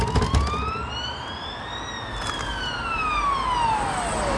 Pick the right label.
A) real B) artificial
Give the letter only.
A